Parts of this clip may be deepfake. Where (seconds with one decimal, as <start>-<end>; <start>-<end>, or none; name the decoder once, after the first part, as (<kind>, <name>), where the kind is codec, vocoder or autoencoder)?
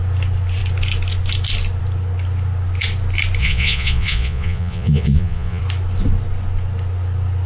3.4-5.6 (vocoder, Vocos)